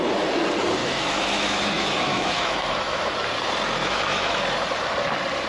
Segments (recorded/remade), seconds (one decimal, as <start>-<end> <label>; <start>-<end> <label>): 0.0-0.8 recorded; 0.8-3.0 remade; 3.0-3.8 recorded; 3.8-4.4 remade; 4.4-5.5 recorded

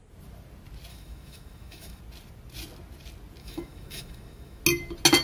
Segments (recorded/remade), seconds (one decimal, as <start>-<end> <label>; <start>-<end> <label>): 0.0-0.9 recorded; 0.9-2.0 remade; 2.0-3.4 recorded; 3.4-4.6 remade; 4.6-5.2 recorded